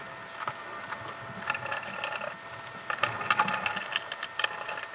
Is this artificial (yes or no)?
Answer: no